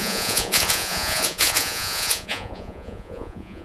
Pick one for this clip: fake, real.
fake